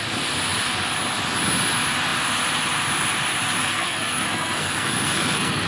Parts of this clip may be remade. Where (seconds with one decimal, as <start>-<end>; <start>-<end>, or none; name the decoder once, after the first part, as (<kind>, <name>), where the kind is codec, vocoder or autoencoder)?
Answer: 3.6-5.7 (codec, SNAC)